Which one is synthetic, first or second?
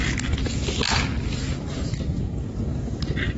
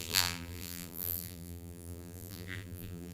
second